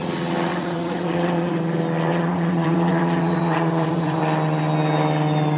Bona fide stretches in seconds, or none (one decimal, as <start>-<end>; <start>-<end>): 0.0-0.5; 1.5-2.1; 4.2-5.6